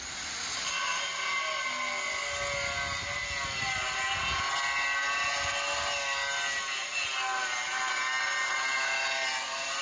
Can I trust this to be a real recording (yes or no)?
yes